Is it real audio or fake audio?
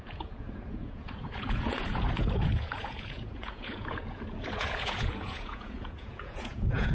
fake